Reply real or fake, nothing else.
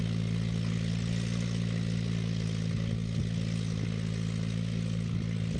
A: real